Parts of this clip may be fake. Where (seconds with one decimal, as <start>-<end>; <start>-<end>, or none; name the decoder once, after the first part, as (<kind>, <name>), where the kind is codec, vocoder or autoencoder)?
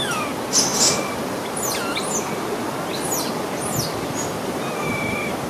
none